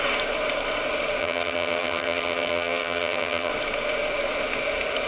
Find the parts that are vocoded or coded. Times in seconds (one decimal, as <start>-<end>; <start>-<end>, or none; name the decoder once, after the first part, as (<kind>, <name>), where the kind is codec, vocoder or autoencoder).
1.2-3.5 (vocoder, HiFi-GAN)